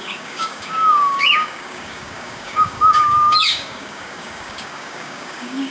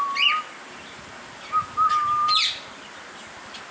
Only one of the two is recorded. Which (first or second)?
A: second